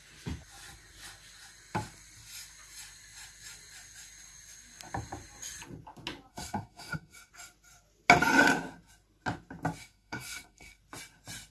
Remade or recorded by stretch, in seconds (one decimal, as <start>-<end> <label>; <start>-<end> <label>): 0.0-6.3 recorded; 6.3-7.3 remade; 7.3-9.8 recorded; 9.8-10.8 remade; 10.8-11.5 recorded